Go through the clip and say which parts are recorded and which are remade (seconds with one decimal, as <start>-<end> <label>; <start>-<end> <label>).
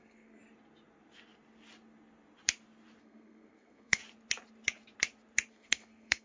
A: 0.0-0.4 remade; 0.4-3.0 recorded; 3.0-4.0 remade; 4.0-5.5 recorded; 5.5-6.2 remade